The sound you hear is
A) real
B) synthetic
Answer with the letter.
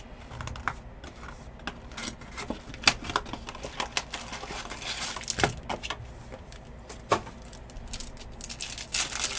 A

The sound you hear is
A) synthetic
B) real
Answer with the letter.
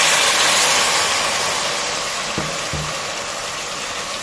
B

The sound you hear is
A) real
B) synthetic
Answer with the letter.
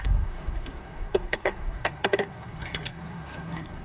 B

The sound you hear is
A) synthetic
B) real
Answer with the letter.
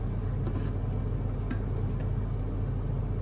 B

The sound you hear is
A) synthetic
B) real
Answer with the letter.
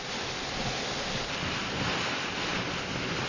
B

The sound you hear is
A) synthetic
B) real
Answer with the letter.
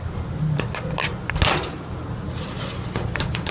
B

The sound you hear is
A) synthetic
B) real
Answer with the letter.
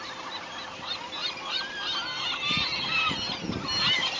A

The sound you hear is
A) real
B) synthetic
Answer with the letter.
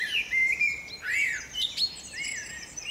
A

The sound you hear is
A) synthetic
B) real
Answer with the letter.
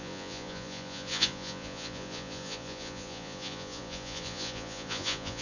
A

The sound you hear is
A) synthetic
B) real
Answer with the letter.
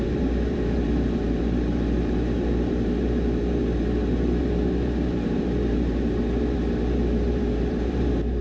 A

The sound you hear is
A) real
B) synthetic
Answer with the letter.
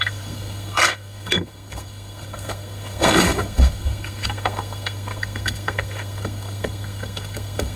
B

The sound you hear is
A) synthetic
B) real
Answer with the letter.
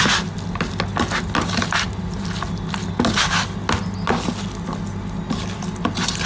B